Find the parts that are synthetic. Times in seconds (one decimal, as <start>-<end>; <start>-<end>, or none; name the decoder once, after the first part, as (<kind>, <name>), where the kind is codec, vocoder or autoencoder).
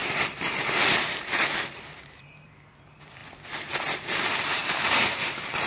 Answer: 0.0-3.2 (vocoder, BigVGAN v2); 3.8-5.7